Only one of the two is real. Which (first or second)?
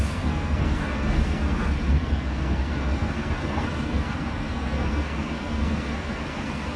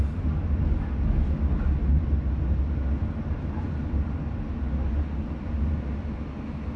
second